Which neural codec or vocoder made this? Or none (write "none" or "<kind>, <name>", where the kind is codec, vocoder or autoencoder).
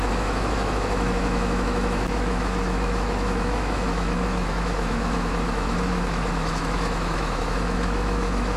autoencoder, DAC-VAE